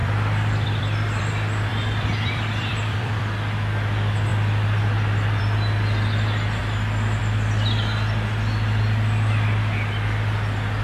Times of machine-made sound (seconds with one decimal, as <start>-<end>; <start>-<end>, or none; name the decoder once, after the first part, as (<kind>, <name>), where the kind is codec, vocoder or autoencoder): 0.0-1.2 (vocoder, BigVGAN v2); 1.7-3.2; 4.3-5.4; 6.6-7.2